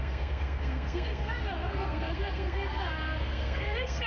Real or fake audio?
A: fake